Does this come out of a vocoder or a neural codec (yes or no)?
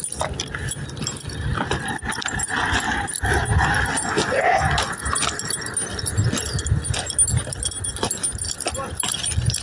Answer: no